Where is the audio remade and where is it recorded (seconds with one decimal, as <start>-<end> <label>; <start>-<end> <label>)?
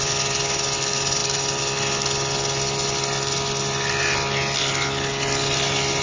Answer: 0.0-6.0 recorded